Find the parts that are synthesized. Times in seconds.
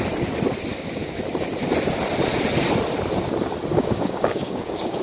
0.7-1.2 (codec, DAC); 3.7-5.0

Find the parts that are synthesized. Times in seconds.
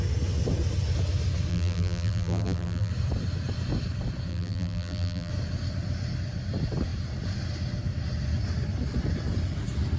1.5-2.9 (vocoder, BigVGAN v2); 4.3-5.3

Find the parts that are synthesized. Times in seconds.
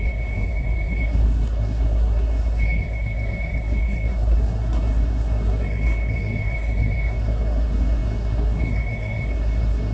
0.0-9.9 (codec, SNAC)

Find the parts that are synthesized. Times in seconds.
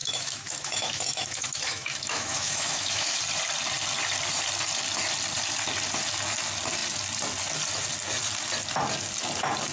0.0-3.2 (autoencoder, DAC-VAE)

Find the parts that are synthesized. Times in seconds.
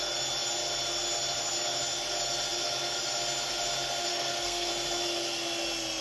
4.1-4.7 (codec, SNAC)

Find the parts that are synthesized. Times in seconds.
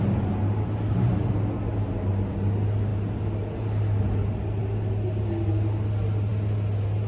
none